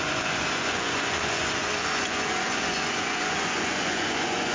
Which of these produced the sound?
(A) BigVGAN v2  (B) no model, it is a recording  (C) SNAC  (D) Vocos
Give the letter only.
D